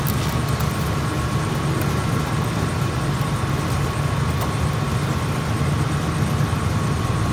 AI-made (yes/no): no